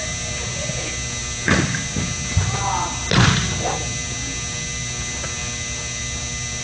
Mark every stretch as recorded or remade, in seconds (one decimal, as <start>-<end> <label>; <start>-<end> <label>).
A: 0.0-6.6 recorded